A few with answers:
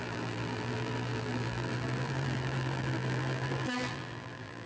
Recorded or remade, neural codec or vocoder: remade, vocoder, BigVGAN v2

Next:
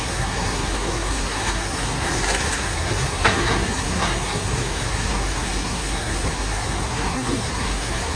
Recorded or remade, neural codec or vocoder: remade, codec, SNAC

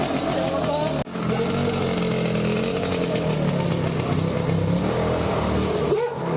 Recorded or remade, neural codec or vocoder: recorded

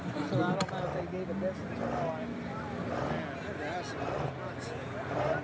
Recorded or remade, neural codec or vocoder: recorded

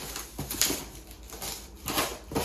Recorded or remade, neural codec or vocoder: recorded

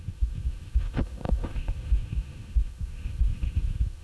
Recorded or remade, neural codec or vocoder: remade, autoencoder, DAC-VAE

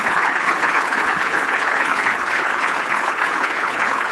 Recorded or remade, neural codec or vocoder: remade, codec, HILCodec